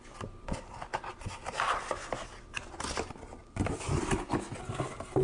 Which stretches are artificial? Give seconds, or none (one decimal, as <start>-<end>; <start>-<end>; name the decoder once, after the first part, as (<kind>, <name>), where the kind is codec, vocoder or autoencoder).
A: none